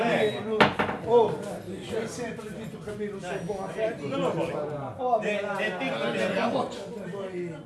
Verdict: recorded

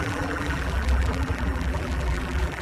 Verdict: remade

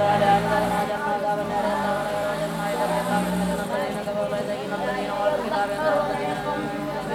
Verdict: recorded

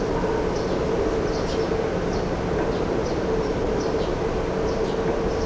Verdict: recorded